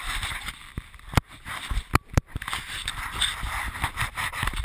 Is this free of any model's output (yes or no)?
no